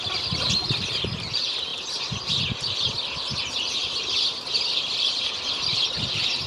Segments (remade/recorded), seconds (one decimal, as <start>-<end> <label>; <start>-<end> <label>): 0.0-1.7 recorded; 1.7-2.9 remade; 2.9-3.8 recorded; 3.8-6.5 remade